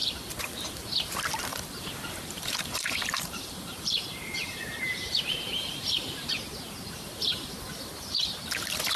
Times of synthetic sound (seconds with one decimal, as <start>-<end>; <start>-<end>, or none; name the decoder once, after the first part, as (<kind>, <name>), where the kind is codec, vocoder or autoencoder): 0.0-0.5 (vocoder, BigVGAN v2); 1.5-6.3